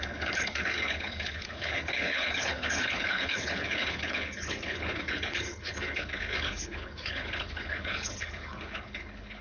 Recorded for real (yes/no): no